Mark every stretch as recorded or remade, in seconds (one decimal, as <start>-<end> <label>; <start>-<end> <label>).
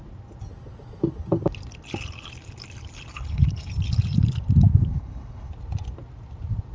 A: 0.0-3.1 recorded; 3.1-3.7 remade; 3.7-4.9 recorded; 4.9-5.5 remade; 5.5-6.7 recorded